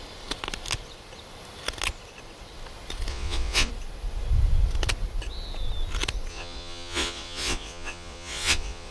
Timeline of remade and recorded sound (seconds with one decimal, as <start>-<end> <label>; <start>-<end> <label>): 0.0-3.1 recorded; 3.1-3.7 remade; 3.7-6.3 recorded; 6.3-8.9 remade